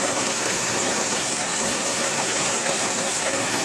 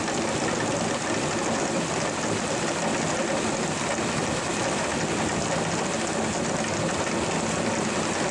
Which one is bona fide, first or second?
second